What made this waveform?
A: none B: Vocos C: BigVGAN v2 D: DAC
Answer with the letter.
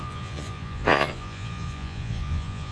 B